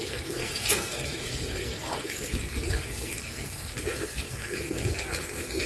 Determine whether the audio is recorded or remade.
remade